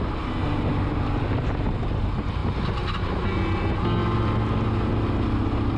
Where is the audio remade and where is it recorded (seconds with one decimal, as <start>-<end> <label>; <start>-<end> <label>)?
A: 0.0-5.8 recorded